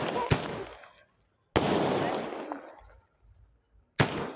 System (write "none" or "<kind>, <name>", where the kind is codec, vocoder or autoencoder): none